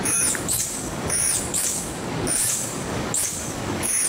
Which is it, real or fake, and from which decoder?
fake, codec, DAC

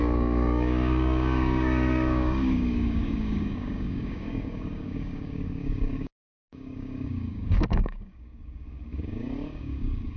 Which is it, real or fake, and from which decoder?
fake, codec, DAC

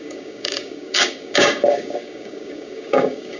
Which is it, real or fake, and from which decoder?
fake, codec, DAC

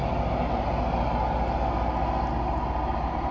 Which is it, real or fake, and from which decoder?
real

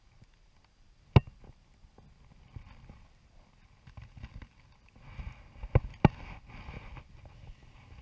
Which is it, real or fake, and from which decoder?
real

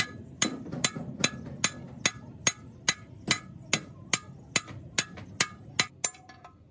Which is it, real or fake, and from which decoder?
real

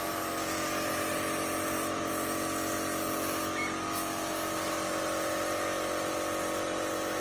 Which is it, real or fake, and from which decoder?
real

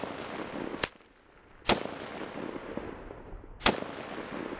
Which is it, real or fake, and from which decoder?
real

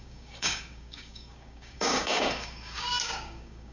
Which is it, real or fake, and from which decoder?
fake, codec, DAC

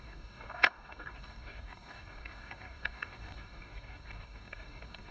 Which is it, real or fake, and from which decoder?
fake, codec, DAC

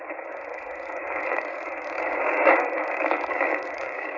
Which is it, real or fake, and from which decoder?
fake, codec, DAC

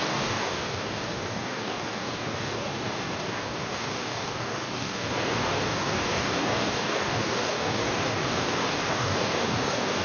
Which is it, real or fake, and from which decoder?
fake, codec, DAC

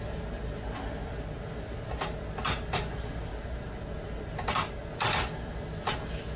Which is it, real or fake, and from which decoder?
real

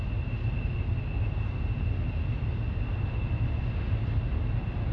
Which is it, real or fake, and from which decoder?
real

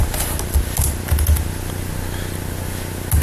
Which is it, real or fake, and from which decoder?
real